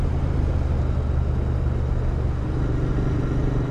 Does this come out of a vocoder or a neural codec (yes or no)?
no